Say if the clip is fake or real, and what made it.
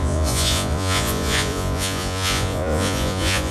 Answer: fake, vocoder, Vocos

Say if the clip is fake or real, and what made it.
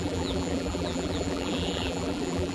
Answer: fake, vocoder, BigVGAN v2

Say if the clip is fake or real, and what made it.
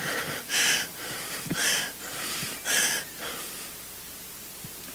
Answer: real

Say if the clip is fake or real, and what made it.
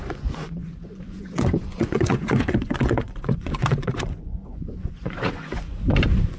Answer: fake, vocoder, Vocos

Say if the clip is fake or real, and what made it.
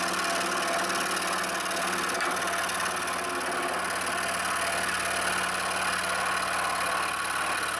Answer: real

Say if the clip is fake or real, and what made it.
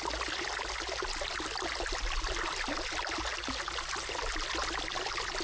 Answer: real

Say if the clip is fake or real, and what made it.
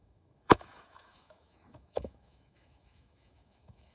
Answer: fake, autoencoder, DAC-VAE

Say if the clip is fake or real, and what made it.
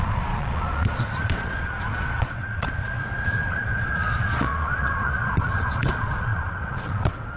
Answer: fake, vocoder, Vocos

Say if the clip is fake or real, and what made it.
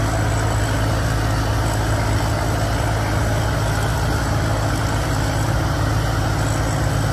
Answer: real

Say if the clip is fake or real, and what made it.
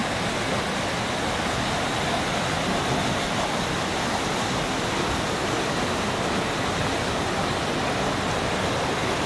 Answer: real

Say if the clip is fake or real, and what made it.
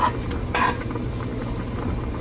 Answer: real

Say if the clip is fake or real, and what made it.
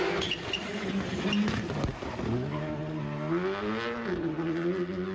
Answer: real